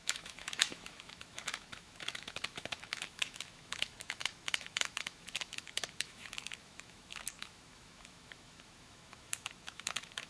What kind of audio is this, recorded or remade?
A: remade